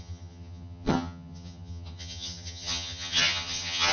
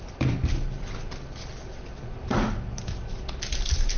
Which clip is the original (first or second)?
second